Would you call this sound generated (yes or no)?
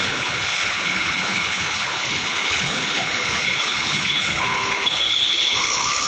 yes